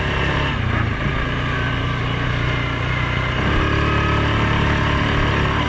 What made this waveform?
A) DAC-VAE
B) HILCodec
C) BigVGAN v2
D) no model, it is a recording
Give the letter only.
D